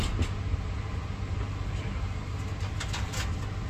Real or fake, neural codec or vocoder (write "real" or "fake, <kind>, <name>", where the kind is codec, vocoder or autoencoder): real